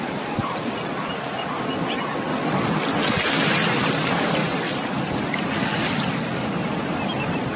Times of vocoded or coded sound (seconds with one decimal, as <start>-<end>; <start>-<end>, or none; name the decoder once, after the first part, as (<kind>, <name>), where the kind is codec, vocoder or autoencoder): none